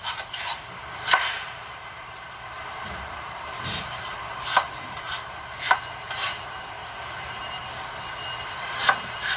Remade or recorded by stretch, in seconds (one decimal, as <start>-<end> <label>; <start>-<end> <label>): 0.0-7.6 remade; 7.6-8.5 recorded; 8.5-9.4 remade

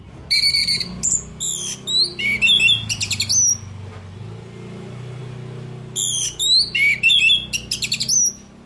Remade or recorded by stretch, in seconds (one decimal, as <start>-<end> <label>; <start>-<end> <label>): 0.0-8.7 recorded